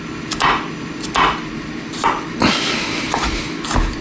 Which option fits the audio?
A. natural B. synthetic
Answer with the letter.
A